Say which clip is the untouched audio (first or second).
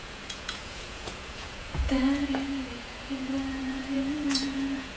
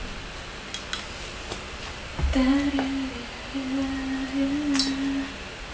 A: second